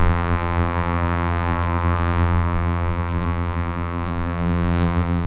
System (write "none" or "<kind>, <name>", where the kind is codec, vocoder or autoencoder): vocoder, BigVGAN v2